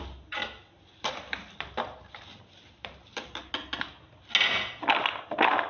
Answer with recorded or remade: recorded